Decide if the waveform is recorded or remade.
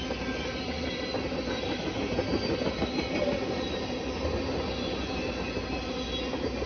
recorded